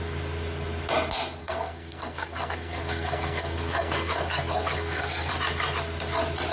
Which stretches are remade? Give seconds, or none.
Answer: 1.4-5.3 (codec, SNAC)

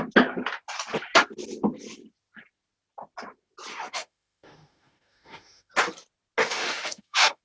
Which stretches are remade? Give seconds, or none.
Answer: 3.7-5.7 (autoencoder, DAC-VAE); 6.4-7.4

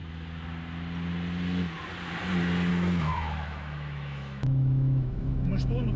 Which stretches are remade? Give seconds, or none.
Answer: 2.7-6.0 (autoencoder, DAC-VAE)

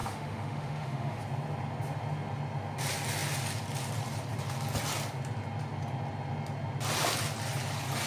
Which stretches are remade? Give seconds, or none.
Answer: 0.0-1.2 (autoencoder, DAC-VAE)

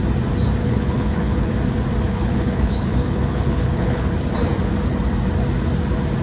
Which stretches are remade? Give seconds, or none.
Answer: 0.6-1.5 (codec, HILCodec); 2.1-4.1

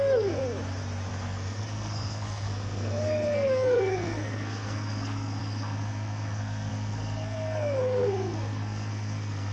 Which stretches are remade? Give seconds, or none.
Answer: 0.0-0.4 (codec, SNAC); 1.1-9.5

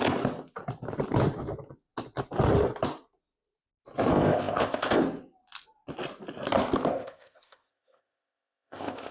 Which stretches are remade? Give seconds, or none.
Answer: 4.1-5.0 (codec, ZipCodec); 6.9-9.1

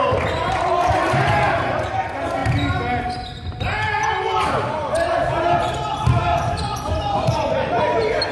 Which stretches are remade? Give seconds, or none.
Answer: 6.3-7.8 (vocoder, Vocos)